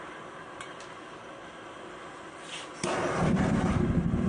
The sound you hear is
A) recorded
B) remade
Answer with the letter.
A